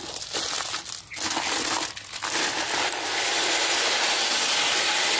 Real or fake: real